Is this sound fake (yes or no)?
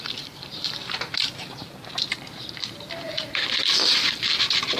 yes